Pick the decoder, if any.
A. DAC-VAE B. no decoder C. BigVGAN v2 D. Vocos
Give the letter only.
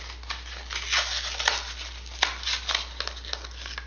B